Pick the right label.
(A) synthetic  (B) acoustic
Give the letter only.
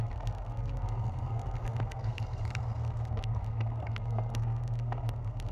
A